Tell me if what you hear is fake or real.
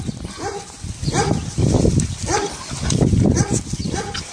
real